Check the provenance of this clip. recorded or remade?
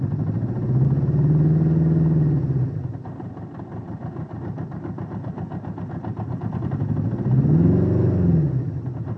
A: recorded